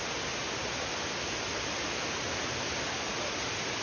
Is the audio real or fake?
real